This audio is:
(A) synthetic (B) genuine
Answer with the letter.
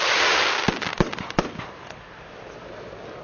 B